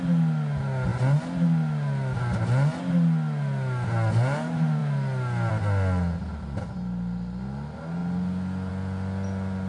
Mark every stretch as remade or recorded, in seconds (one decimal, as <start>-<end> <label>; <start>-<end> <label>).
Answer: 0.0-9.7 recorded